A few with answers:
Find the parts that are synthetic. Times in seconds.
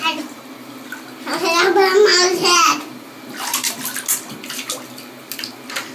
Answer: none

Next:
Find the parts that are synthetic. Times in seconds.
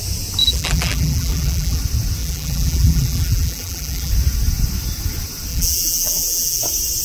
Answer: 0.4-1.8 (vocoder, BigVGAN v2); 2.2-4.1; 5.5-6.6